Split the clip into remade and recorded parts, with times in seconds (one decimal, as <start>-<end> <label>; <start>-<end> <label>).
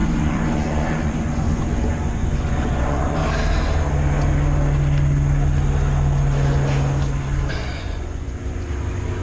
0.0-3.2 remade; 3.2-7.5 recorded; 7.5-9.2 remade